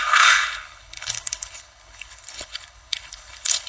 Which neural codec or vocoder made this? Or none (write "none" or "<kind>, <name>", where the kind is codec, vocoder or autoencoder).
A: codec, HILCodec